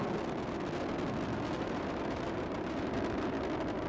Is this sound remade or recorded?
recorded